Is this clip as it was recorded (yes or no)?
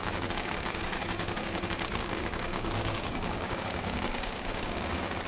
no